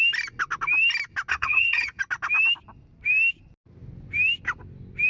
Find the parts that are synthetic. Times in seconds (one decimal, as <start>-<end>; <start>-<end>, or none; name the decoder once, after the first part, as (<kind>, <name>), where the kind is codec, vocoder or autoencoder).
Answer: 1.3-2.0 (vocoder, HiFi-GAN)